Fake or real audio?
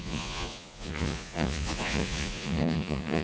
fake